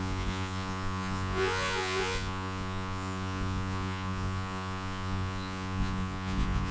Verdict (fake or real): fake